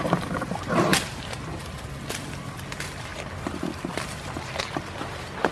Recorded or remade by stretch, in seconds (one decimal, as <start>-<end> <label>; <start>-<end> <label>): 0.0-5.5 recorded